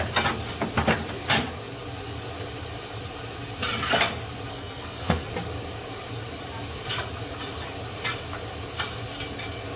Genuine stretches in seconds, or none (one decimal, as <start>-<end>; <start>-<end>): 0.0-4.5; 5.3-9.8